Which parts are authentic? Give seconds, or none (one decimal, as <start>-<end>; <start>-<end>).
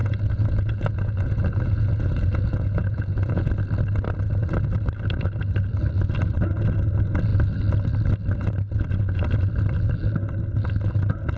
3.5-11.4